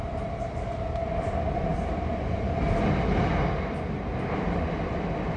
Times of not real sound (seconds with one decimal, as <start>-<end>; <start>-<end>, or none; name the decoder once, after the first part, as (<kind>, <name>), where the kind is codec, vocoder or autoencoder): 0.0-1.7 (vocoder, BigVGAN v2); 4.9-5.4